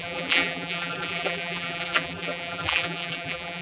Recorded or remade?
remade